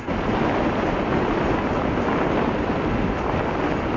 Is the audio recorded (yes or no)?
yes